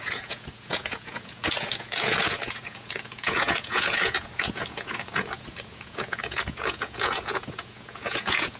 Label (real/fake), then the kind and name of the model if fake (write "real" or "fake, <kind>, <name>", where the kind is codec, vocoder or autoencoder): fake, vocoder, Vocos